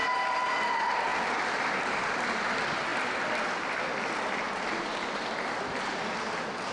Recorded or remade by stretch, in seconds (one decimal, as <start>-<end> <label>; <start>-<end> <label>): 0.0-0.6 remade; 0.6-1.1 recorded; 1.1-2.2 remade; 2.2-2.9 recorded; 2.9-3.6 remade; 3.6-6.7 recorded